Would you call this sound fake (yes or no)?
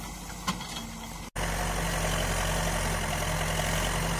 no